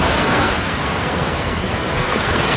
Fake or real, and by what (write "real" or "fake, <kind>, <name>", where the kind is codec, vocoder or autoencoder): fake, codec, SNAC